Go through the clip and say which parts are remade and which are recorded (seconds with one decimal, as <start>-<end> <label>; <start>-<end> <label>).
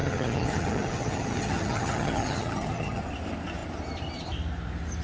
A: 0.0-3.0 remade; 3.0-5.0 recorded